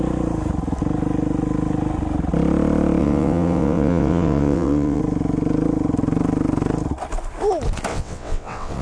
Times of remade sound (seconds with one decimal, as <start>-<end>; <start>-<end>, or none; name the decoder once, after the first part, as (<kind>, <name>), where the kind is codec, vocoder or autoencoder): 3.0-5.0 (vocoder, WaveNeXt); 7.9-8.8